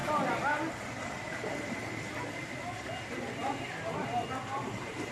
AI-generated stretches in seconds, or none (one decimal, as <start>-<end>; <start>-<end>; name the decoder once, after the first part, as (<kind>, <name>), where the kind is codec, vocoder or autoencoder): 0.7-1.8 (vocoder, BigVGAN v2)